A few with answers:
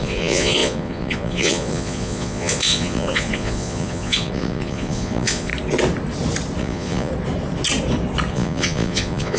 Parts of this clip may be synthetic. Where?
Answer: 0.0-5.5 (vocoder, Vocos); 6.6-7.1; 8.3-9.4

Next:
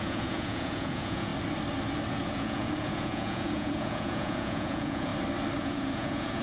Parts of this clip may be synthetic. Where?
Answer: 0.0-1.3 (vocoder, Vocos); 2.1-5.1; 5.6-6.4

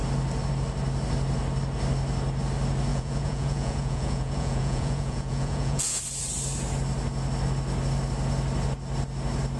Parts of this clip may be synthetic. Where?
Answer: 2.9-6.0 (vocoder, Vocos)

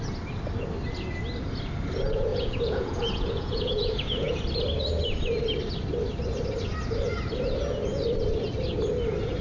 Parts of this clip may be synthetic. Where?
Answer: 2.3-4.3 (vocoder, Vocos)